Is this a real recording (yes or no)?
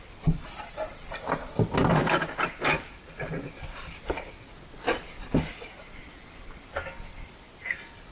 yes